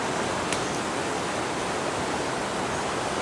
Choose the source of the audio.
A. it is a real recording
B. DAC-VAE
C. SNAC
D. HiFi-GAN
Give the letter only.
A